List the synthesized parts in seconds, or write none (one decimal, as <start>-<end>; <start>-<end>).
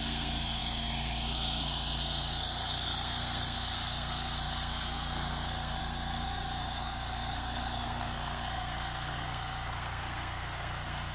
0.0-11.1